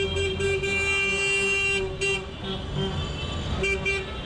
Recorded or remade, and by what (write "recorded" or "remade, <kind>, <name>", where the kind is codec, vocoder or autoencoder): recorded